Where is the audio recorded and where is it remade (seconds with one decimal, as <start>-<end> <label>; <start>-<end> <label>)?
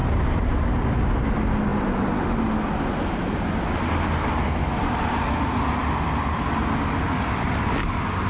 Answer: 0.0-8.3 recorded